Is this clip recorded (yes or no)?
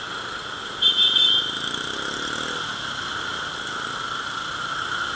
yes